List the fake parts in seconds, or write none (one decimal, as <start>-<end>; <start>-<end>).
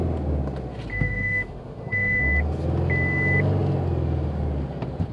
0.9-2.2